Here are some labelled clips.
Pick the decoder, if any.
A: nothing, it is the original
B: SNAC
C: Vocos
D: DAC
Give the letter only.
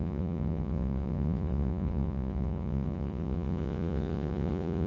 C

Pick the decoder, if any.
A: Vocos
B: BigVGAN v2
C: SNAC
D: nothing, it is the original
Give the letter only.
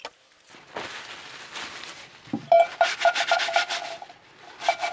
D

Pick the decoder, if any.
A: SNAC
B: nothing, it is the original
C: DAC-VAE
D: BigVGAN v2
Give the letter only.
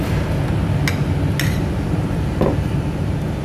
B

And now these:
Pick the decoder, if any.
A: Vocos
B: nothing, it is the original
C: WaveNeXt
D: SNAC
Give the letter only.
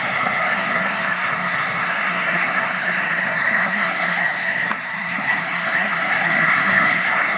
D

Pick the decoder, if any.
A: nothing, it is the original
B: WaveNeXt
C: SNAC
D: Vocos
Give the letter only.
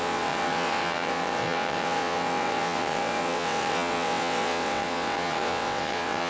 B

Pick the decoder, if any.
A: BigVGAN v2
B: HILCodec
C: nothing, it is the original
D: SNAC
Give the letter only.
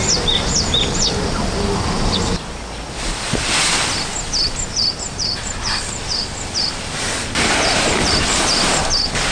C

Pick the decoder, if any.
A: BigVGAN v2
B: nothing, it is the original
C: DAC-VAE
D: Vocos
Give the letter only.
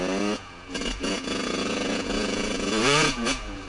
D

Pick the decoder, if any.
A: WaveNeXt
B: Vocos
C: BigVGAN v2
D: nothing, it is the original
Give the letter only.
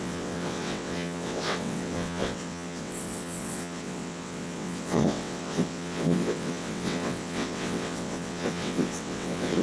A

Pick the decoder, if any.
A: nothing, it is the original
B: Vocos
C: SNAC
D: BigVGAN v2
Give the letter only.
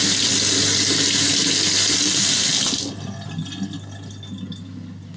A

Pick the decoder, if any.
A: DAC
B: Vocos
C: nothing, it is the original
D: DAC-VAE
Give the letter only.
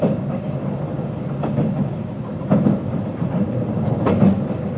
C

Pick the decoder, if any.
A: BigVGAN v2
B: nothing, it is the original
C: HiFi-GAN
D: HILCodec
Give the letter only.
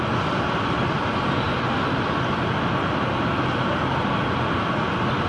B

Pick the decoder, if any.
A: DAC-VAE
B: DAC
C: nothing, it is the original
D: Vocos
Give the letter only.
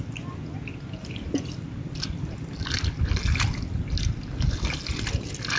C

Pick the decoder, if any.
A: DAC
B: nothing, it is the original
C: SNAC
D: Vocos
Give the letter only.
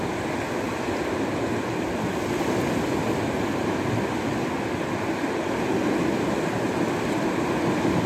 B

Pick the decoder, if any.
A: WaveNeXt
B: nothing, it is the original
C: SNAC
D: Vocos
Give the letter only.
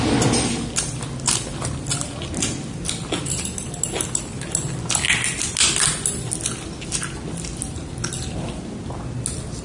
B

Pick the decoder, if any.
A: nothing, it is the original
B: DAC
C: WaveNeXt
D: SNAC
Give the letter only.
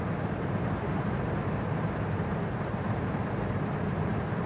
A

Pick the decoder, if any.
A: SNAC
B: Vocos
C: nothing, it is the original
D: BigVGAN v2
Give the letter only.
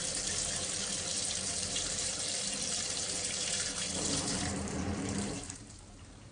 D